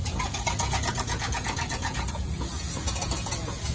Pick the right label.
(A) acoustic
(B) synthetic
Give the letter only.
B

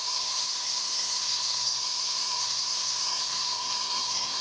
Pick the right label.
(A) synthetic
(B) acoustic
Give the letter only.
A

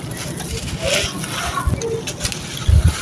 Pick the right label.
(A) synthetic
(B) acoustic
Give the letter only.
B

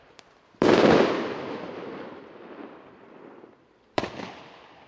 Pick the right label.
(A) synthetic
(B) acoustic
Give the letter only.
A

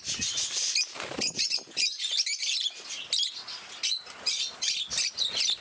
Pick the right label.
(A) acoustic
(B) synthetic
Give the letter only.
A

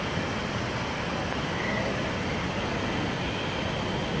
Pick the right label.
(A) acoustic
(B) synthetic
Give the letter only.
A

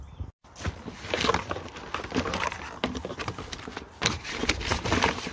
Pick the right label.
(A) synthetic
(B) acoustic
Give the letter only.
B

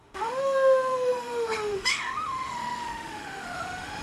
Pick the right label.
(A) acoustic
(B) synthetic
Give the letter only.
B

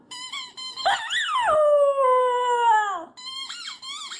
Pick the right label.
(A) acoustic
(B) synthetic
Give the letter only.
A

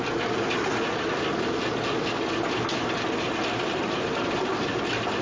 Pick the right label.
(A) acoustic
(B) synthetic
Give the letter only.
A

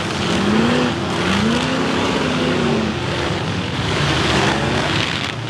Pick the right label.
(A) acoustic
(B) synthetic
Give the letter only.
B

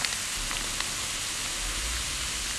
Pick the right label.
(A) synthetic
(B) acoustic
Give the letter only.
B